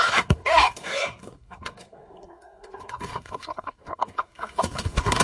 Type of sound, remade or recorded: remade